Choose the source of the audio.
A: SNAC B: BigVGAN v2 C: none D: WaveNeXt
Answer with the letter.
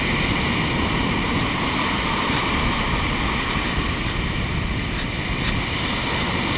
C